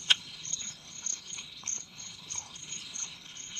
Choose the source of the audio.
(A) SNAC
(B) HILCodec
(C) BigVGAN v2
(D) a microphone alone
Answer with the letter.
B